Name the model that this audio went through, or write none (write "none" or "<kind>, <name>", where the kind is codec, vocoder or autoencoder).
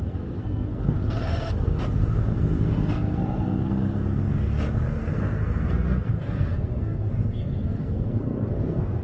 codec, SNAC